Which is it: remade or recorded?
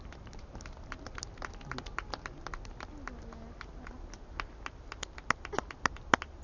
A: recorded